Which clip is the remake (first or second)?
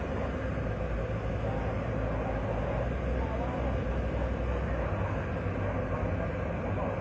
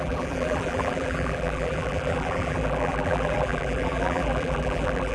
second